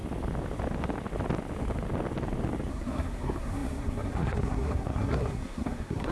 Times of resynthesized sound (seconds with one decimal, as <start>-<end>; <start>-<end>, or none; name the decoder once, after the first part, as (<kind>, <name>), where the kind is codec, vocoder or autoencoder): 2.7-6.1 (codec, SNAC)